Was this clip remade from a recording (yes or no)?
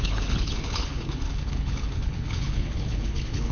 yes